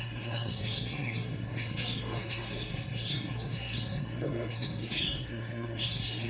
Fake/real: fake